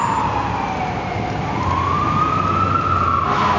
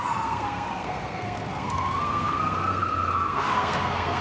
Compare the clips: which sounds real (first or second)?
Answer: first